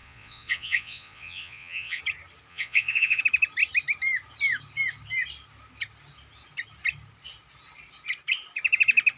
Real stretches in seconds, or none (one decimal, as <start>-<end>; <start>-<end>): 2.0-2.5; 3.2-9.2